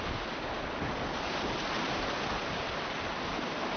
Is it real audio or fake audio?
real